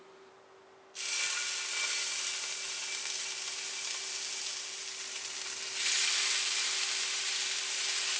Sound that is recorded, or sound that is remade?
recorded